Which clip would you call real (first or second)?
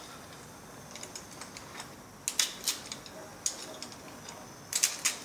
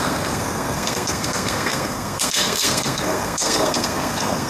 first